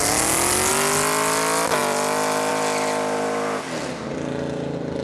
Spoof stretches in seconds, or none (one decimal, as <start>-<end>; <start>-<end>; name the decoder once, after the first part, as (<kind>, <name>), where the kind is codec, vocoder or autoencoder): none